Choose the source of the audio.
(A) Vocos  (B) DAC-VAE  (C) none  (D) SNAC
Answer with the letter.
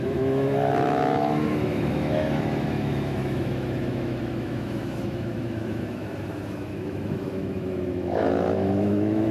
B